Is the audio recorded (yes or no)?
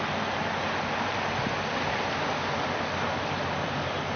yes